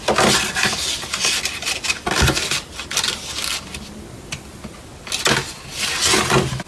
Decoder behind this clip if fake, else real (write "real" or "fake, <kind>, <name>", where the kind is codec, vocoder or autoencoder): real